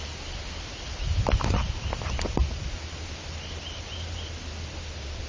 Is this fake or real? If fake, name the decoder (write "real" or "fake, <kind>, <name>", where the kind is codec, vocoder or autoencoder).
fake, vocoder, BigVGAN v2